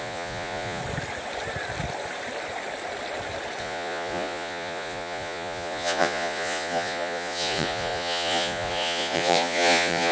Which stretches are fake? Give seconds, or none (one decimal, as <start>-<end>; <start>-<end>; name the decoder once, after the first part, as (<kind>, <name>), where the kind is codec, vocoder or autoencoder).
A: 0.0-0.8 (vocoder, Vocos); 3.6-10.1